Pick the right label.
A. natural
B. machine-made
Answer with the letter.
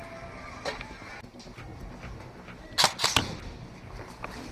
A